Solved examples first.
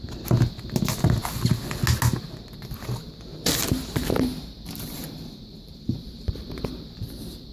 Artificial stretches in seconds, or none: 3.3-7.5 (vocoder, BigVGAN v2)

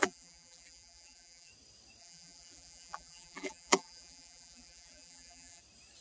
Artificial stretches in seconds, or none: 0.0-1.5 (vocoder, BigVGAN v2); 2.0-5.6

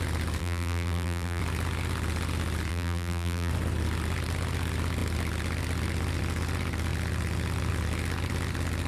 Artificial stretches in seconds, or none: 0.4-1.4 (vocoder, BigVGAN v2); 2.7-3.5

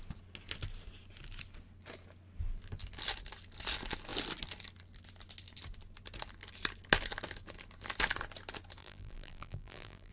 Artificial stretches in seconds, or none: 8.8-10.1 (vocoder, BigVGAN v2)

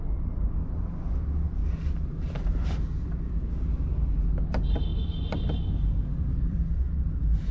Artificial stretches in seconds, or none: 1.6-3.5 (vocoder, BigVGAN v2); 4.9-7.5

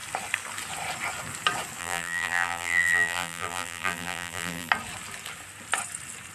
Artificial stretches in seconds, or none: 1.8-4.7 (vocoder, BigVGAN v2)

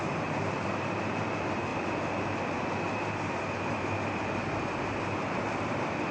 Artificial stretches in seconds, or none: 0.0-1.7 (vocoder, BigVGAN v2); 5.4-6.1